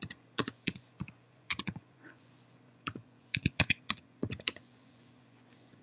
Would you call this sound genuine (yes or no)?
no